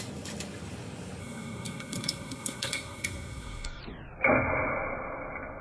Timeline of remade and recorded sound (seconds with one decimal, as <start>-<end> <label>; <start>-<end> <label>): 0.0-1.2 recorded; 1.2-3.8 remade; 3.8-5.6 recorded